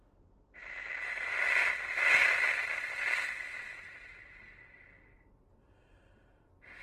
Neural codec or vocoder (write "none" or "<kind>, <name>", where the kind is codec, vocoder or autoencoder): none